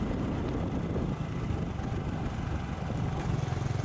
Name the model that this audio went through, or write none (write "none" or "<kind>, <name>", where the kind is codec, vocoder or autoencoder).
none